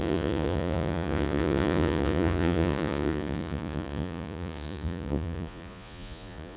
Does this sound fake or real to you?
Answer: fake